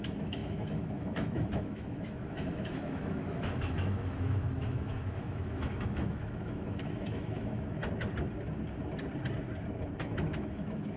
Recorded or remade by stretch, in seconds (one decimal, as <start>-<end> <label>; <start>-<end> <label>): 0.0-7.8 remade; 7.8-10.0 recorded; 10.0-11.0 remade